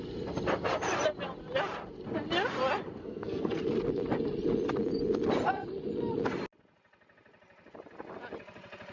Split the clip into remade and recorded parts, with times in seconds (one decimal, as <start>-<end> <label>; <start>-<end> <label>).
0.0-3.0 recorded; 3.0-3.6 remade; 3.6-8.9 recorded